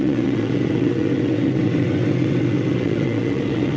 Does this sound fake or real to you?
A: fake